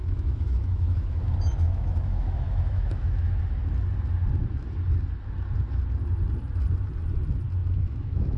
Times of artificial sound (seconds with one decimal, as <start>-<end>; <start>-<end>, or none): 0.0-3.4; 7.6-8.4